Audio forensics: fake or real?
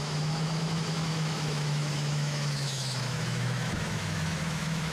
fake